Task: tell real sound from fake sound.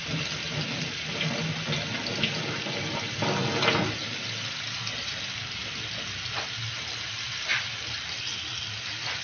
real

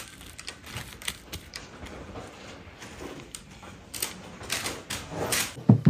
fake